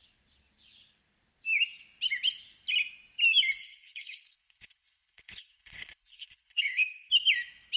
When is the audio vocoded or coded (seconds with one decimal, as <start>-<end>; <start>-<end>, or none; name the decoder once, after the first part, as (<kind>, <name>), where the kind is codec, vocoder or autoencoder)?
3.6-7.1 (codec, HILCodec)

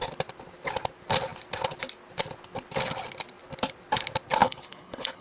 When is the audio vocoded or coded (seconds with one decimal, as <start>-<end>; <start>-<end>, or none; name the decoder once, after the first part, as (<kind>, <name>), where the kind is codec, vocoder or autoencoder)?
4.4-5.2 (codec, HILCodec)